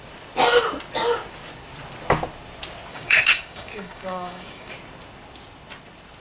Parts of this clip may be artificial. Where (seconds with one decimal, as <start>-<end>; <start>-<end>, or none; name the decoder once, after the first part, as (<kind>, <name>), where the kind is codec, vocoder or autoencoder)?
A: 2.9-4.7 (codec, DAC)